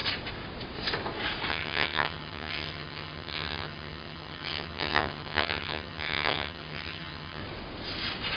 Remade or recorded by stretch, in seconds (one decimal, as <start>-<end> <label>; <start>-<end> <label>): 0.0-1.5 recorded; 1.5-7.4 remade; 7.4-8.4 recorded